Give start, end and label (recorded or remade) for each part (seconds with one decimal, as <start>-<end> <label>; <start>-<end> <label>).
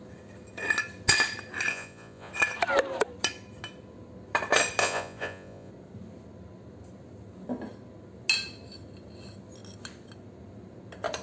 0.0-1.7 recorded; 1.7-2.3 remade; 2.3-4.8 recorded; 4.8-5.7 remade; 5.7-11.2 recorded